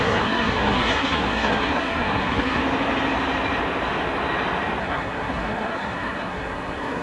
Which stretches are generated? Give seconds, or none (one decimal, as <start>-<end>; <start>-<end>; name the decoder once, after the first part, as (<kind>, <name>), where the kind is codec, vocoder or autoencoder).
0.0-2.6 (codec, SNAC); 4.8-7.0